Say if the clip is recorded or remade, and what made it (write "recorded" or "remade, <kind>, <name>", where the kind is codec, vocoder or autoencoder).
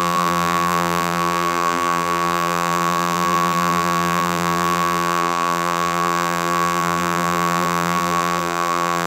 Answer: remade, vocoder, BigVGAN v2